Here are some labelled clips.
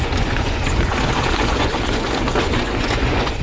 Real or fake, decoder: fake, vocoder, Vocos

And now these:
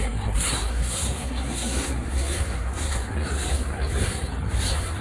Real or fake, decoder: fake, codec, SNAC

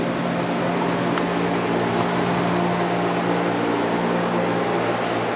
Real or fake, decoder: real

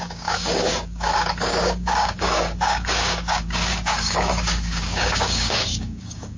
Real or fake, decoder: fake, codec, DAC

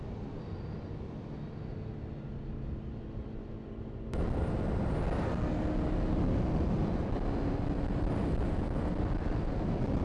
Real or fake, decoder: real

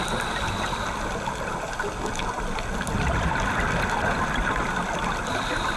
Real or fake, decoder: real